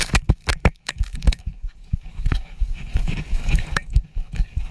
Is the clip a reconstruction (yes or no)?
yes